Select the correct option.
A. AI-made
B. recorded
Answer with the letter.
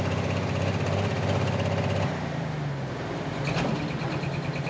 B